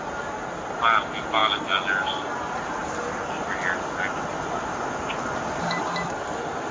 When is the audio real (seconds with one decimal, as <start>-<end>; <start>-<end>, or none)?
0.0-6.7